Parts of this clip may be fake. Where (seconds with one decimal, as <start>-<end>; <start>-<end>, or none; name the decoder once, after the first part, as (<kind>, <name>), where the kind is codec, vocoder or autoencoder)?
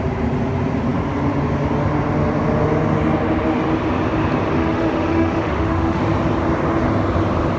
4.5-6.0 (autoencoder, DAC-VAE)